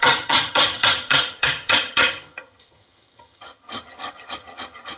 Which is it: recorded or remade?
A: remade